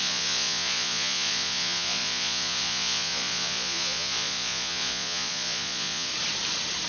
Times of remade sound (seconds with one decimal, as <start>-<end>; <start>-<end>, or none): 0.0-6.1